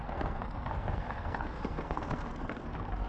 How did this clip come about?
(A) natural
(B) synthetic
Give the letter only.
B